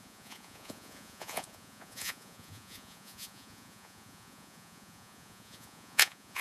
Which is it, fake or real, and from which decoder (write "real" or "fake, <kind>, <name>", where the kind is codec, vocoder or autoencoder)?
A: fake, vocoder, Vocos